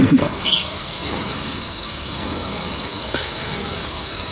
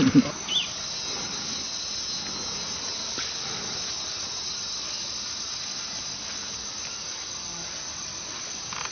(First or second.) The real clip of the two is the second